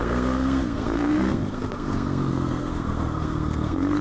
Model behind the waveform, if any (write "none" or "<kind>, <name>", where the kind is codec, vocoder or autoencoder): codec, SNAC